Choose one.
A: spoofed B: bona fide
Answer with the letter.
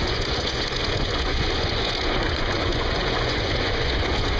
A